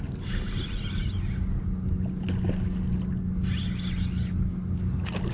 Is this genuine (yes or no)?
yes